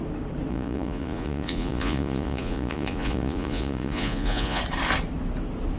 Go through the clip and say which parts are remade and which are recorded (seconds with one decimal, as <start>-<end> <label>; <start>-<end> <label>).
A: 0.0-0.5 recorded; 0.5-4.6 remade; 4.6-5.8 recorded

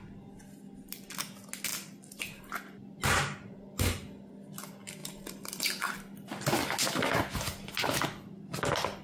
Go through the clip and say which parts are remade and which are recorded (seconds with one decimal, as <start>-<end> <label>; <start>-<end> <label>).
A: 0.0-1.7 recorded; 1.7-2.4 remade; 2.4-5.0 recorded; 5.0-5.9 remade; 5.9-9.0 recorded